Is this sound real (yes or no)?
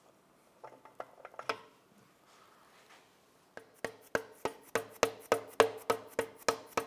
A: yes